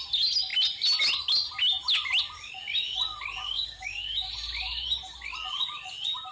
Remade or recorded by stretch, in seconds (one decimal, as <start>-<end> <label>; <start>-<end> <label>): 0.0-3.4 recorded; 3.4-4.3 remade; 4.3-6.3 recorded